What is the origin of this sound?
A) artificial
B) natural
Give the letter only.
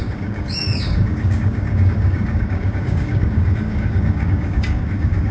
A